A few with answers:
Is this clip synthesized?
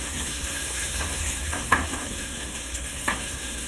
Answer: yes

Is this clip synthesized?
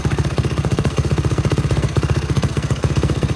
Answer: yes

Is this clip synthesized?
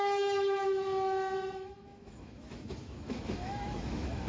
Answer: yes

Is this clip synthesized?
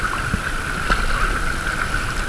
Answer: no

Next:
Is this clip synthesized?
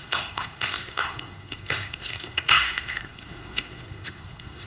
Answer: yes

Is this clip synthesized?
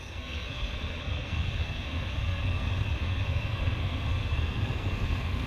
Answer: yes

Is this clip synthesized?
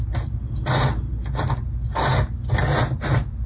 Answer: no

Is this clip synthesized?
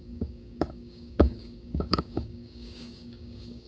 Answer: yes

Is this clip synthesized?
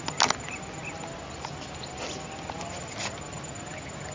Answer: no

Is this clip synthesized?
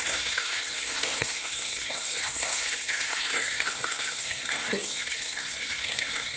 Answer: yes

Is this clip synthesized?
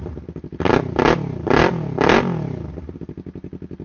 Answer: no